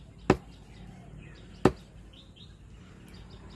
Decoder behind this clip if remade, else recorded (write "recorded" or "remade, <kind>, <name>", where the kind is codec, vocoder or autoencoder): recorded